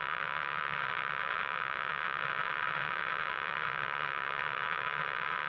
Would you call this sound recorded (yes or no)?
no